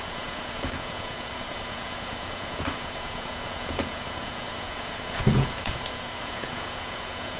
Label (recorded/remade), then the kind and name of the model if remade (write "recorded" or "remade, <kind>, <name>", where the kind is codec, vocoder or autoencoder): remade, vocoder, Vocos